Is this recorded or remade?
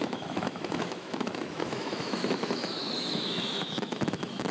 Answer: remade